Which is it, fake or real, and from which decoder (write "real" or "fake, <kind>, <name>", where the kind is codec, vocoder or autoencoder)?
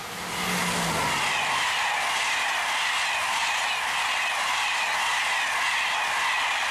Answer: real